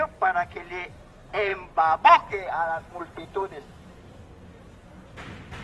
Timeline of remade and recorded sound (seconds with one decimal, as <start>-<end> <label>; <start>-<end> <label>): 0.0-5.6 recorded